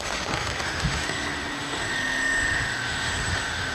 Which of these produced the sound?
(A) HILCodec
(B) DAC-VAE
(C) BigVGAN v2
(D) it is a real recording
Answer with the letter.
B